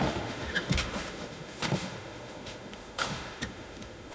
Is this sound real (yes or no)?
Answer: no